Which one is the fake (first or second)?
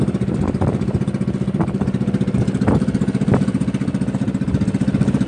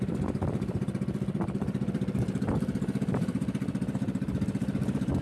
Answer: second